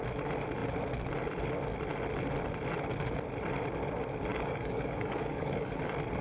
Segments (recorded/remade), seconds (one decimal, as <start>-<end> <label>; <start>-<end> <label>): 0.0-4.3 recorded; 4.3-5.8 remade; 5.8-6.2 recorded